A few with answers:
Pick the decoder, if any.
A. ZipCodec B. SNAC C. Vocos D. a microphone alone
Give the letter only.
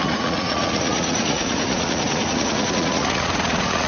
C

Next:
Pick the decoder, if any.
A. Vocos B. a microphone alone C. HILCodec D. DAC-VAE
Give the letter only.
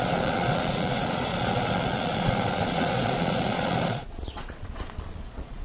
A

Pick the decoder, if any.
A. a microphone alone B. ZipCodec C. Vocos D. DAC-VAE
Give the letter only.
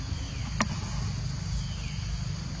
A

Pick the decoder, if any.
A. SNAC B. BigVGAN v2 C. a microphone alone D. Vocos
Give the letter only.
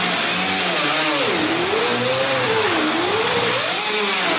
C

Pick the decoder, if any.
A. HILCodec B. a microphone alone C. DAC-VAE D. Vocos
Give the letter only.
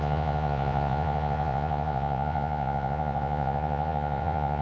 D